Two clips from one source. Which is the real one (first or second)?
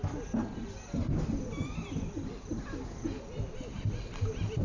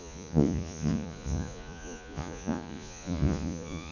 first